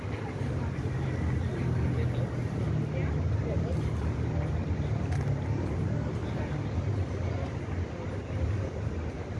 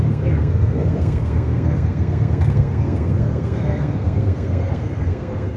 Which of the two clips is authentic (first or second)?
first